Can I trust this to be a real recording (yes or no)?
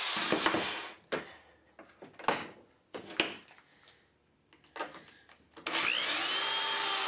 yes